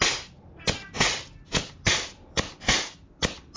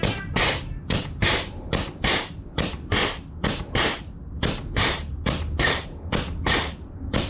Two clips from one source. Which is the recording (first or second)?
first